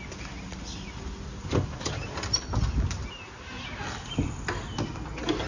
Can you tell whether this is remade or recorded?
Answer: recorded